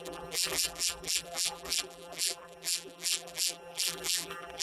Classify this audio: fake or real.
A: fake